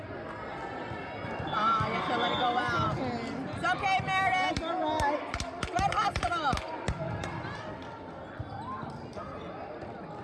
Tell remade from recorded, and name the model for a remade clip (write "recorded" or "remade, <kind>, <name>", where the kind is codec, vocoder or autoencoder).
recorded